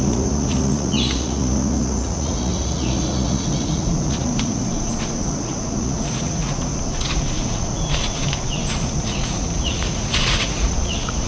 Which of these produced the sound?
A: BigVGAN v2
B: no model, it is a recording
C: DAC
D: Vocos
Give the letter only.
D